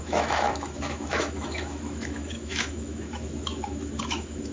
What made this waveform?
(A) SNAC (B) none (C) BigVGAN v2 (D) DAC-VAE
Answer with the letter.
D